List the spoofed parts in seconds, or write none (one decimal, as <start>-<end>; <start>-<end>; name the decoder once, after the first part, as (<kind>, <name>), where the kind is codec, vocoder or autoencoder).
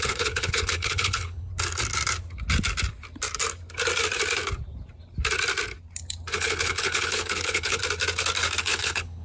0.0-1.5 (codec, HILCodec); 6.3-7.8; 8.6-9.2